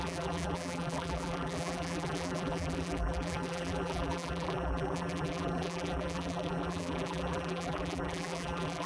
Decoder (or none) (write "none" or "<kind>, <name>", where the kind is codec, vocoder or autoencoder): vocoder, BigVGAN v2